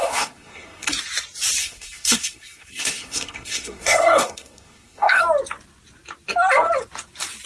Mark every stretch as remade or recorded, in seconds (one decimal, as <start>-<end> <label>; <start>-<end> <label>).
0.0-0.9 remade; 0.9-1.6 recorded; 1.6-5.2 remade; 5.2-7.5 recorded